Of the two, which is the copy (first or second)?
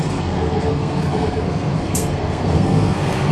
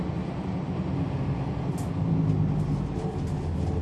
first